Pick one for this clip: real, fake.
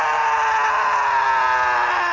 real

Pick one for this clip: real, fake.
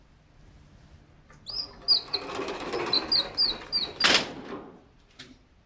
real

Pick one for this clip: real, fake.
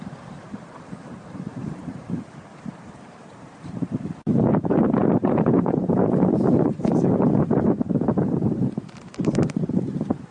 fake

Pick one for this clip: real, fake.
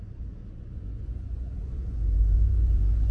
fake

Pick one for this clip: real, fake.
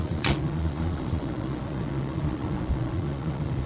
fake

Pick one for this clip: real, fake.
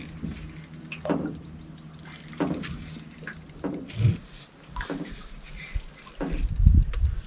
real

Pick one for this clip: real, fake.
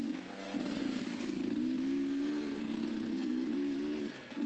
fake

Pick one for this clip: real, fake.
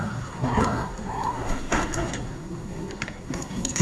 fake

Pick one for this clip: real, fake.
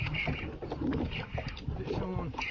real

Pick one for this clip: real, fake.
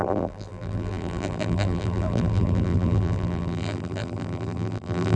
fake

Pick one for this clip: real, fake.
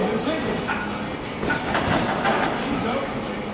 real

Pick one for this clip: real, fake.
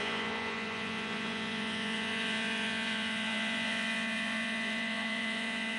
fake